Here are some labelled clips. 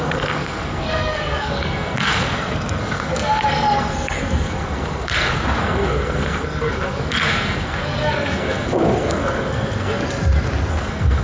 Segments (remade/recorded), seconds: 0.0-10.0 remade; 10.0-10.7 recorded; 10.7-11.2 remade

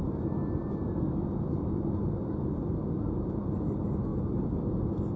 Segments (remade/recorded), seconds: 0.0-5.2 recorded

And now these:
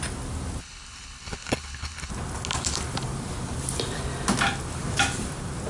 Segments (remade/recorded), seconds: 0.0-0.6 recorded; 0.6-2.1 remade; 2.1-5.7 recorded

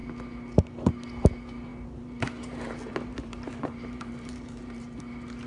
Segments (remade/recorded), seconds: 0.0-1.7 recorded; 1.7-5.0 remade; 5.0-5.5 recorded

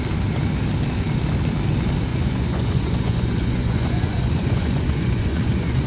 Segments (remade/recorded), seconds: 0.0-2.1 recorded; 2.1-5.9 remade